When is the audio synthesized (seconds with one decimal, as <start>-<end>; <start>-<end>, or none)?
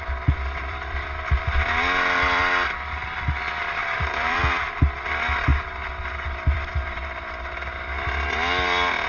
0.7-2.4; 3.8-4.4